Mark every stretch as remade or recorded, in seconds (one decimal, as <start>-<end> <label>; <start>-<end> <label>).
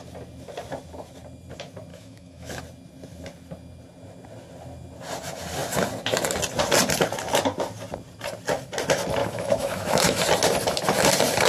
0.0-1.9 recorded; 1.9-2.6 remade; 2.6-9.2 recorded; 9.2-10.2 remade; 10.2-11.5 recorded